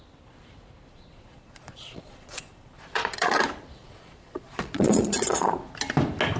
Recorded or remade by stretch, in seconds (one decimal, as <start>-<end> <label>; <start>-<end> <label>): 0.0-0.9 recorded; 0.9-3.4 remade; 3.4-3.8 recorded; 3.8-5.5 remade; 5.5-6.4 recorded